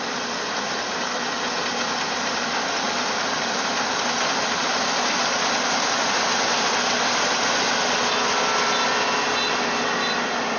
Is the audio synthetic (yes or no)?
no